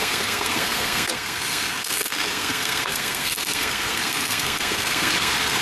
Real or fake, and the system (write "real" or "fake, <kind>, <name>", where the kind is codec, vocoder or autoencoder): fake, codec, SNAC